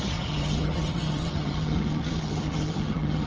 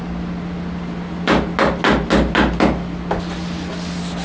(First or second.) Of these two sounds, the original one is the second